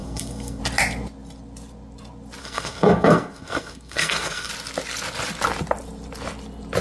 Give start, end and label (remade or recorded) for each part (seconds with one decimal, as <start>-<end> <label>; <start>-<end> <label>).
0.0-0.6 remade; 0.6-2.4 recorded; 2.4-4.5 remade; 4.5-6.8 recorded